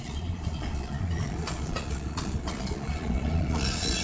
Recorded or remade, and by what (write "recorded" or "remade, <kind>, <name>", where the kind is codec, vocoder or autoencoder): remade, vocoder, Vocos